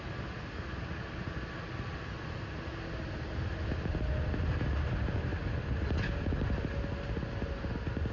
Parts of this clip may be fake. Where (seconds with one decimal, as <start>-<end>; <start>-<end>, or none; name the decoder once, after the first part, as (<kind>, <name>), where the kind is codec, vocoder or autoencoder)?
none